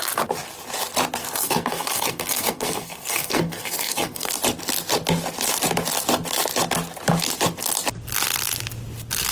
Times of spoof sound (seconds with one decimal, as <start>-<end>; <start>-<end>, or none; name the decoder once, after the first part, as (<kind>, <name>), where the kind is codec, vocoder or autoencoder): 1.2-4.3 (codec, SNAC)